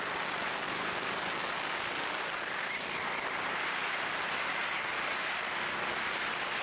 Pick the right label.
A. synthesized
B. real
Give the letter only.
B